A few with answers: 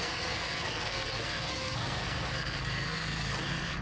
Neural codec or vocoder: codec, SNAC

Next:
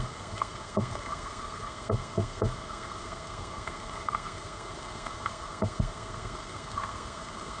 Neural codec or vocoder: codec, SNAC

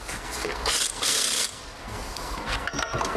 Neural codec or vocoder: codec, SNAC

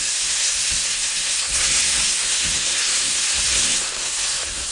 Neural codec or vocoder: codec, SNAC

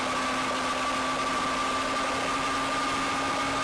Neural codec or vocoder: none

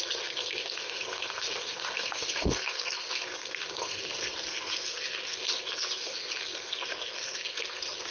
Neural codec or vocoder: codec, SNAC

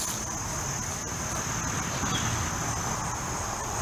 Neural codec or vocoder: none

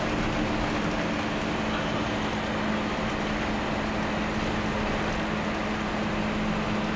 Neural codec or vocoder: none